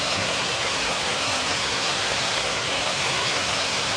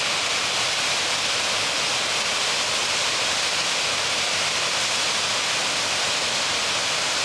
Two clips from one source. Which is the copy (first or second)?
first